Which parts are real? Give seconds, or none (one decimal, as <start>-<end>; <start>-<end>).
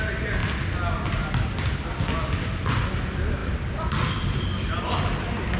0.0-5.6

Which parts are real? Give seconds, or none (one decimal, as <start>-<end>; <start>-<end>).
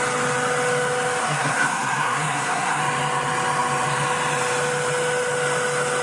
0.0-1.2; 2.8-6.0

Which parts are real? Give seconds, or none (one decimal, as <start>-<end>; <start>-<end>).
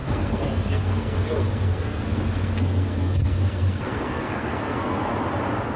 5.1-5.8